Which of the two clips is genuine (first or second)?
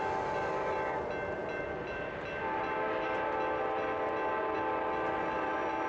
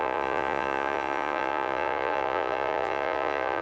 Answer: first